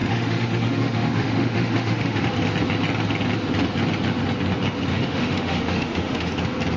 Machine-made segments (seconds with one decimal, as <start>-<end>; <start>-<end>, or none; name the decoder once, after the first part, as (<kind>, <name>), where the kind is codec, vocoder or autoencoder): 0.0-2.2 (autoencoder, DAC-VAE); 4.9-6.3